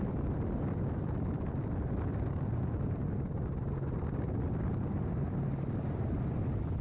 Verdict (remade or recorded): recorded